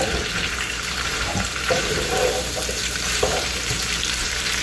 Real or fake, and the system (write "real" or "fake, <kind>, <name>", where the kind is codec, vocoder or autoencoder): fake, vocoder, BigVGAN v2